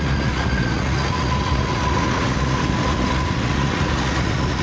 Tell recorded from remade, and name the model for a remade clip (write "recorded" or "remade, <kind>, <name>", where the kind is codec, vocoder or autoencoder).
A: remade, vocoder, Vocos